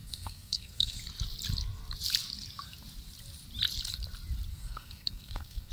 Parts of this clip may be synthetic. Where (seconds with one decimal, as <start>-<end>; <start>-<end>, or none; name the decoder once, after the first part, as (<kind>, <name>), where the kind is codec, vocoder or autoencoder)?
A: 0.0-1.0 (codec, SNAC); 4.5-5.7